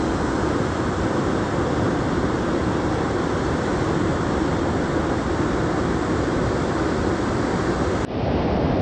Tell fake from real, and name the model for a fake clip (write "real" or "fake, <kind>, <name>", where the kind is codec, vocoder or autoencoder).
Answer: real